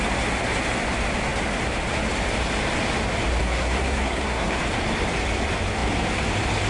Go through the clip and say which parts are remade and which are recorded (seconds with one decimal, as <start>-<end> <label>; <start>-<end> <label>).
0.0-3.4 recorded; 3.4-4.6 remade; 4.6-6.7 recorded